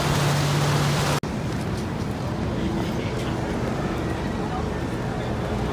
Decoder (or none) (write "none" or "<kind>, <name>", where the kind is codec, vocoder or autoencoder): none